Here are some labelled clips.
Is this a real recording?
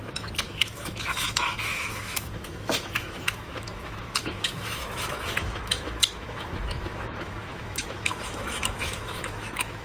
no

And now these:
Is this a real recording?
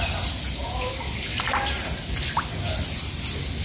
yes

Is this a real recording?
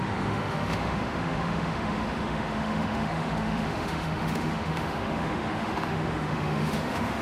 no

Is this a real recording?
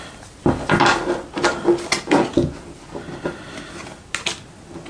yes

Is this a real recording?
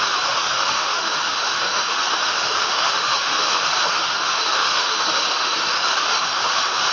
no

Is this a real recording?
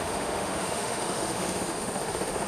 no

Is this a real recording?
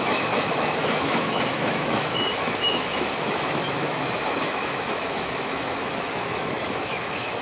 no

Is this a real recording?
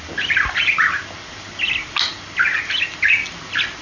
yes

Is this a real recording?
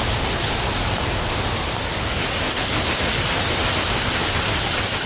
yes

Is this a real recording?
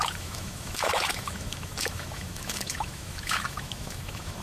no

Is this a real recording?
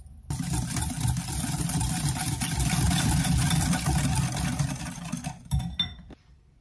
yes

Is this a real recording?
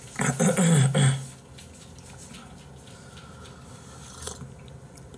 yes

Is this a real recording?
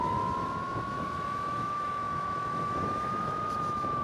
no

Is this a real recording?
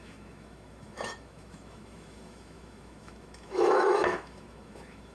no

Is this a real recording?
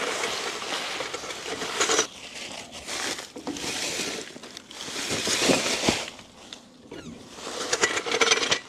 yes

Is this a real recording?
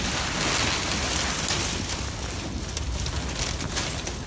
yes